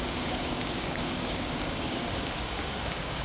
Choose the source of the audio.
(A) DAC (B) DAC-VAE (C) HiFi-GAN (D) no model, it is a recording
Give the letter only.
A